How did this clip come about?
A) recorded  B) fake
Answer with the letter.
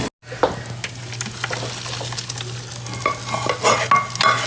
A